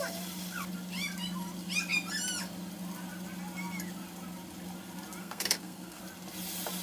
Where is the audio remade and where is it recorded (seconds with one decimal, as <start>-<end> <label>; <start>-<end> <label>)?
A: 0.0-5.2 recorded; 5.2-6.0 remade; 6.0-6.8 recorded